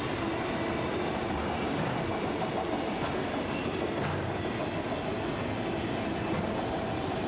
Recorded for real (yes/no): yes